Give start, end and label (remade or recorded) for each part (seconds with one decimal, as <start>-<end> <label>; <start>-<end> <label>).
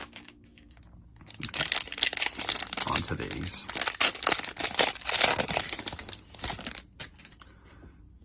0.0-0.8 remade; 0.8-8.2 recorded